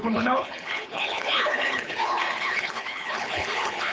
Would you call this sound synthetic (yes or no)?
yes